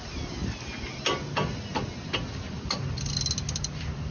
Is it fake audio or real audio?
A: real